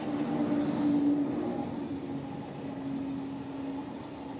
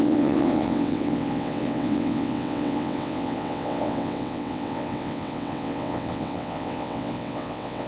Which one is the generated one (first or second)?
second